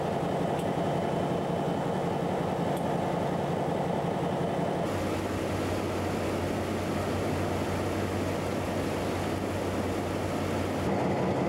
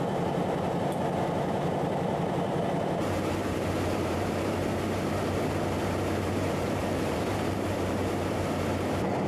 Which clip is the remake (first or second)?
second